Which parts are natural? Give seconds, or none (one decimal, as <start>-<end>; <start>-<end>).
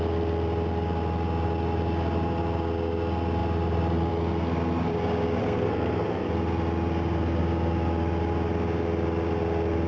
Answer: 0.0-5.4; 6.3-9.9